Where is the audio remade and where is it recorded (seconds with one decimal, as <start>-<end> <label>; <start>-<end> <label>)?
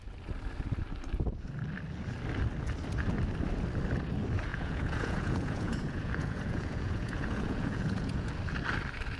0.0-4.5 recorded; 4.5-8.3 remade; 8.3-9.2 recorded